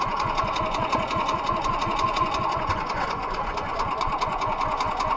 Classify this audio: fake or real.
fake